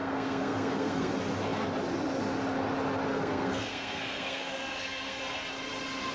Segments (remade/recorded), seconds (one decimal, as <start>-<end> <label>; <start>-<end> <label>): 0.0-1.1 remade; 1.1-3.1 recorded; 3.1-5.2 remade; 5.2-6.1 recorded